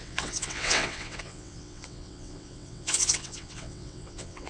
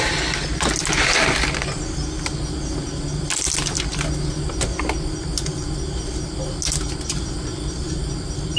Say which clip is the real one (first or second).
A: second